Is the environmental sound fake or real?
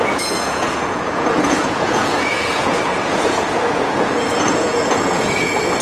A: fake